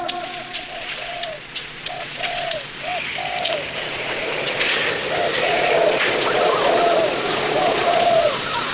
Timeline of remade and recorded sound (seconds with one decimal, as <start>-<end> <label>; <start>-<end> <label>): 0.0-2.9 remade; 2.9-3.8 recorded; 3.8-4.8 remade; 4.8-5.4 recorded; 5.4-8.7 remade